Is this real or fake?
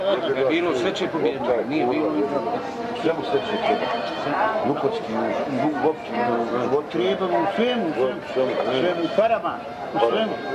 real